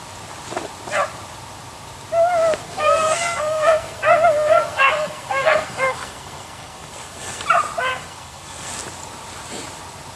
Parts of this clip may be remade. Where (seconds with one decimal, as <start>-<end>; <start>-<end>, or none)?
2.6-7.4; 7.9-8.7